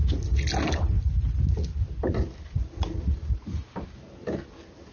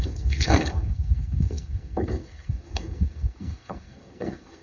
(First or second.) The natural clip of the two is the first